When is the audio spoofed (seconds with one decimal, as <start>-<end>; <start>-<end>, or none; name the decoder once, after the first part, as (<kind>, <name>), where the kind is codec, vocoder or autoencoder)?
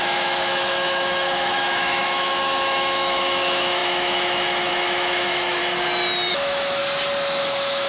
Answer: 0.0-5.6 (autoencoder, DAC-VAE); 6.3-6.8; 7.4-7.9